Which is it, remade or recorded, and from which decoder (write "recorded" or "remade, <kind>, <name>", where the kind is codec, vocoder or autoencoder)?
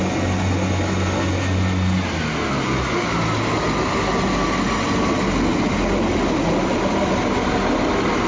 recorded